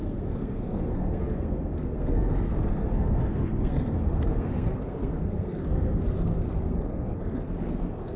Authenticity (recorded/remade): remade